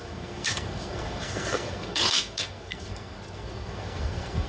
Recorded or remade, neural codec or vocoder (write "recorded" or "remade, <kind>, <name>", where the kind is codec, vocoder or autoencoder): remade, codec, SNAC